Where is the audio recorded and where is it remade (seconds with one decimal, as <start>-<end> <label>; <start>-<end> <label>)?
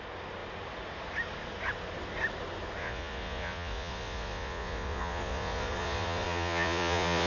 0.0-2.8 recorded; 2.8-7.3 remade